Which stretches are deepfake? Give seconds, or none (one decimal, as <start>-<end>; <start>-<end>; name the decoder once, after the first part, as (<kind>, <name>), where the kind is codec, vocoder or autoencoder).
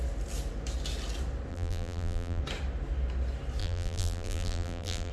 1.5-2.4 (vocoder, BigVGAN v2); 3.6-5.1